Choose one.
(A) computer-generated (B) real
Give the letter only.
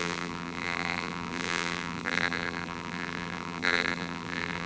A